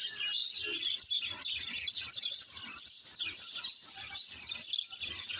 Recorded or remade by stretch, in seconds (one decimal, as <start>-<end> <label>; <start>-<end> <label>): 0.0-3.8 recorded; 3.8-4.5 remade; 4.5-5.4 recorded